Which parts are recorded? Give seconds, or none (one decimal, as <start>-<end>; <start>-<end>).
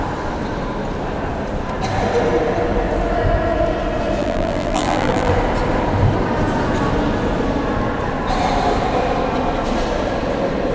0.0-4.2; 5.3-10.7